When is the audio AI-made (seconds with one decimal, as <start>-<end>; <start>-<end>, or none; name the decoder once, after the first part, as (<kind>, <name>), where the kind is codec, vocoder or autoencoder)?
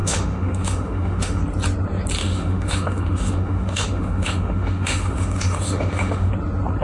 0.0-1.4 (autoencoder, DAC-VAE); 2.2-6.3